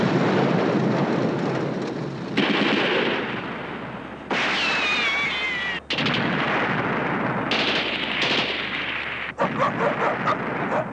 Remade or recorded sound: recorded